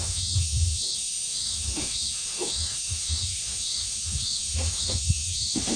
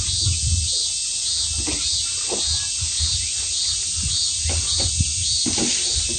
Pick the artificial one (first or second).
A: first